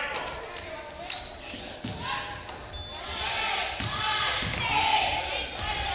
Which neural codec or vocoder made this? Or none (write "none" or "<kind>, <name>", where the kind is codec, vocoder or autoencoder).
none